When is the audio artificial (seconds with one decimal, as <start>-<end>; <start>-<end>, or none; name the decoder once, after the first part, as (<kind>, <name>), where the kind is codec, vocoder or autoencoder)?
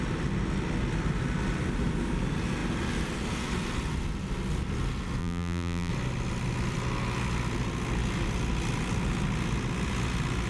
5.2-5.9 (vocoder, BigVGAN v2)